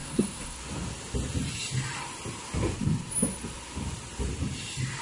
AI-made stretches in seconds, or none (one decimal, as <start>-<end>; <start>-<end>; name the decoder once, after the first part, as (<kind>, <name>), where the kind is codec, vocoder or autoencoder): 0.0-0.6 (codec, SNAC)